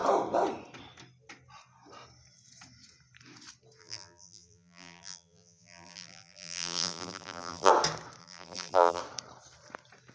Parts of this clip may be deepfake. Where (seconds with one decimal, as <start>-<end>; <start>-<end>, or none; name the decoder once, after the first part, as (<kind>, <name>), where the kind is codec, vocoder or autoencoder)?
3.8-7.7 (vocoder, BigVGAN v2); 8.2-9.0